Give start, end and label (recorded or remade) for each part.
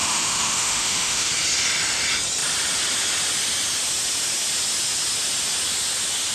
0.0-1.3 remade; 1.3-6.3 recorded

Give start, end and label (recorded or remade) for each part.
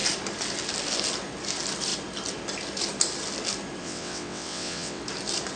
0.0-3.8 recorded; 3.8-5.0 remade; 5.0-5.6 recorded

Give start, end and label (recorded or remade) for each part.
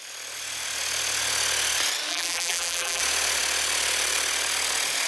0.0-2.1 recorded; 2.1-3.0 remade; 3.0-5.1 recorded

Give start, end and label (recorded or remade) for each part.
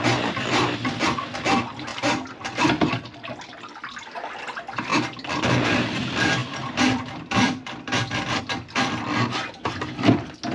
0.0-1.9 recorded; 1.9-3.9 remade; 3.9-6.4 recorded; 6.4-8.4 remade; 8.4-10.5 recorded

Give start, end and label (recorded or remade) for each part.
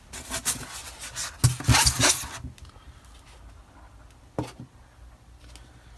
0.0-6.0 recorded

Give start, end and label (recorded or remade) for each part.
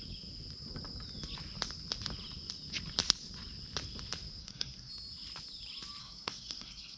0.0-4.4 recorded; 4.4-4.9 remade; 4.9-6.0 recorded; 6.0-7.0 remade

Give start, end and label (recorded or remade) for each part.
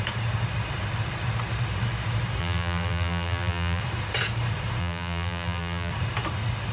0.0-2.4 recorded; 2.4-3.8 remade; 3.8-4.8 recorded; 4.8-5.9 remade; 5.9-6.7 recorded